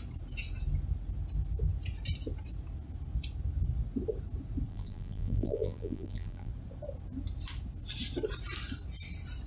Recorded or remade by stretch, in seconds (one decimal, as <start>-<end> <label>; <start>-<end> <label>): 0.0-4.7 recorded; 4.7-6.5 remade; 6.5-9.5 recorded